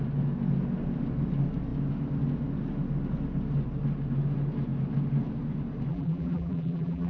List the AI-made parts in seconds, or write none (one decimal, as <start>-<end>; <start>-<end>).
5.9-7.1